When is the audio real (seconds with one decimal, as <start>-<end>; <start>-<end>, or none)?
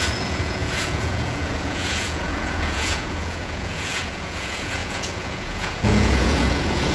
none